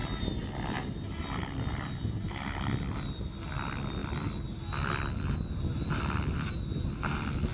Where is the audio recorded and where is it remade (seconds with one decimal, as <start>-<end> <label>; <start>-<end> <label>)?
0.0-7.5 recorded